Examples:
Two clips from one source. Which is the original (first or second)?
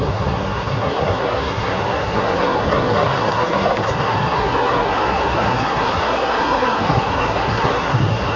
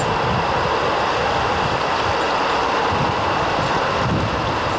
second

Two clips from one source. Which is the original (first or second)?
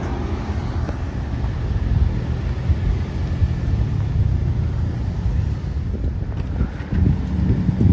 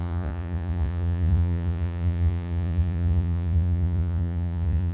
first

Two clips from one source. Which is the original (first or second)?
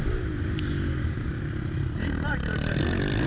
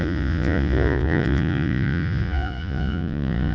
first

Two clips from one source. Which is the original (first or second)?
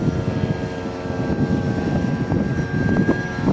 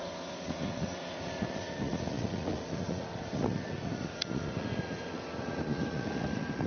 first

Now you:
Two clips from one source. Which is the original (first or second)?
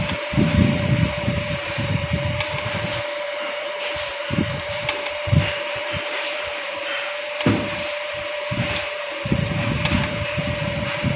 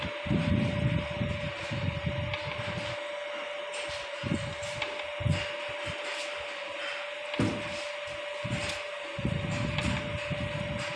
second